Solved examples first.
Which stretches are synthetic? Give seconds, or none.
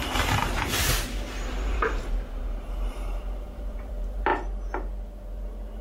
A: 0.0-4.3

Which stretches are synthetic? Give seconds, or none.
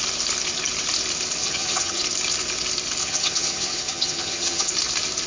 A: 1.4-2.0; 3.0-4.7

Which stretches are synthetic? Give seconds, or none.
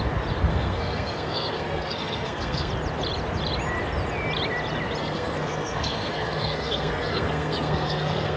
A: 0.5-2.7; 5.0-8.4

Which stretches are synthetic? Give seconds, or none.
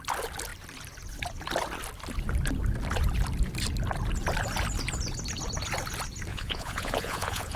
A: 6.3-7.6